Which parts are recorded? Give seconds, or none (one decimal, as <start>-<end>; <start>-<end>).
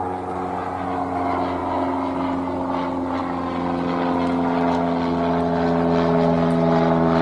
0.0-7.2